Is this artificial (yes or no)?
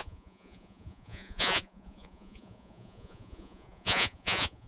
yes